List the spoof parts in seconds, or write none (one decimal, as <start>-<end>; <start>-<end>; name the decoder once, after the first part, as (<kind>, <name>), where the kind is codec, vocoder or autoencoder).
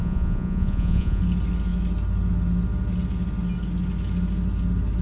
0.0-1.2 (vocoder, Vocos)